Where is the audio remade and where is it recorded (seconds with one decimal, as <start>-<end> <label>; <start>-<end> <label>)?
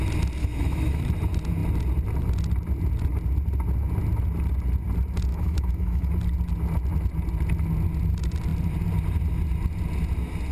0.0-0.4 recorded; 0.4-1.0 remade; 1.0-5.3 recorded; 5.3-6.1 remade; 6.1-10.5 recorded